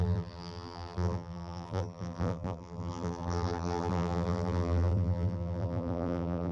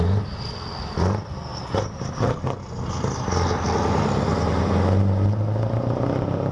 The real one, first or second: second